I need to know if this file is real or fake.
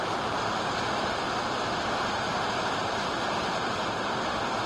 fake